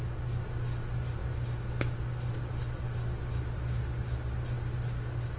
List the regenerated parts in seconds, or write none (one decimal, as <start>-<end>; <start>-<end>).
none